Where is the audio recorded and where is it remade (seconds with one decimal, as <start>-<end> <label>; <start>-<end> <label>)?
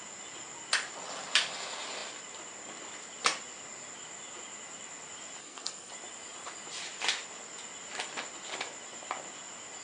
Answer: 0.0-5.4 recorded; 5.4-5.9 remade; 5.9-9.8 recorded